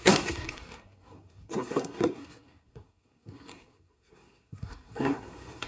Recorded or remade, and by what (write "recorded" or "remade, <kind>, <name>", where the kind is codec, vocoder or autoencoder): remade, codec, SNAC